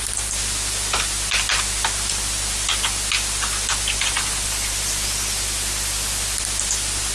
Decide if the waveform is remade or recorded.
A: recorded